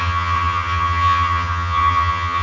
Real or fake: fake